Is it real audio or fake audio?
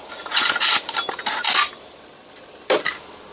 real